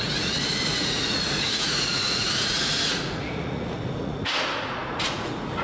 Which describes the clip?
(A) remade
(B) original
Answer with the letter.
A